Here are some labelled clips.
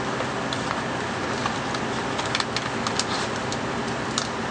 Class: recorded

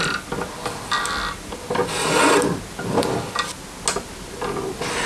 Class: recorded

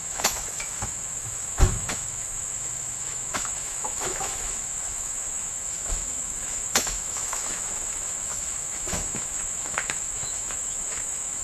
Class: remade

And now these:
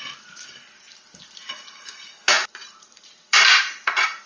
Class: remade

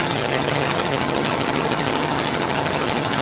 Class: remade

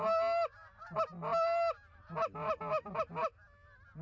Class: recorded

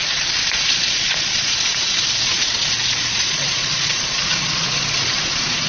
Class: remade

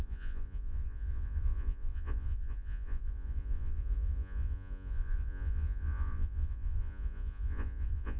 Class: remade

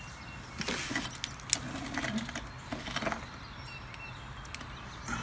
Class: recorded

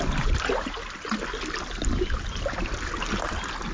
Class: recorded